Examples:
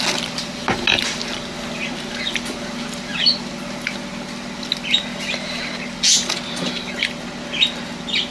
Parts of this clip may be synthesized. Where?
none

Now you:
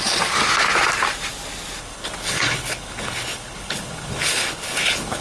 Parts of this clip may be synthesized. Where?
1.8-5.2 (codec, HILCodec)

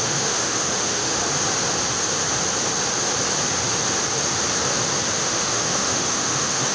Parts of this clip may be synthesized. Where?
0.0-1.2 (autoencoder, DAC-VAE); 5.2-6.7